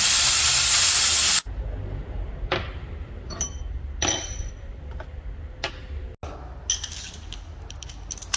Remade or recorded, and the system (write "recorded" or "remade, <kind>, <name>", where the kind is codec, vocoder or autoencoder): recorded